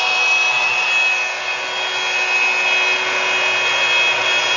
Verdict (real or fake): real